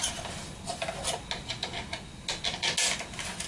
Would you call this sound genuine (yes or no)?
yes